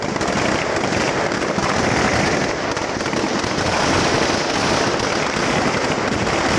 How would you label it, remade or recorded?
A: recorded